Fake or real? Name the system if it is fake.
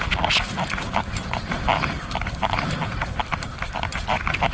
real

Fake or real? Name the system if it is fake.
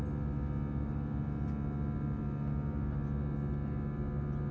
real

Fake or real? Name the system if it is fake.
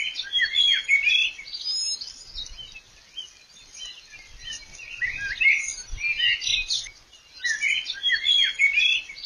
real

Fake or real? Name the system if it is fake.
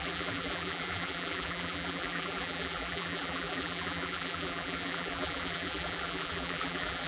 fake, vocoder, BigVGAN v2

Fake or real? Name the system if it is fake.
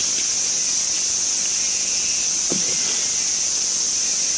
fake, vocoder, BigVGAN v2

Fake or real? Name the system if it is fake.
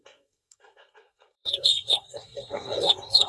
fake, codec, SNAC